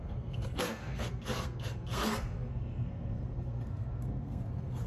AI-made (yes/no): yes